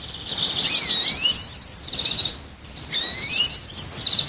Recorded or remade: recorded